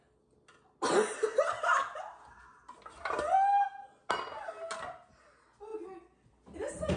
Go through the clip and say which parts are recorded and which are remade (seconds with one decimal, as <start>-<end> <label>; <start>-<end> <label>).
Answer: 0.0-7.0 recorded